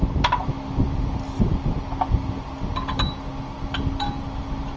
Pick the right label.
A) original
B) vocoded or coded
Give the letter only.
A